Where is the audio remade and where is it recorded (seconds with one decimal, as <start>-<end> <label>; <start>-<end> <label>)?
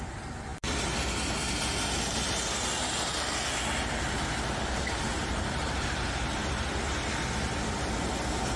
0.0-5.2 recorded; 5.2-6.7 remade; 6.7-8.6 recorded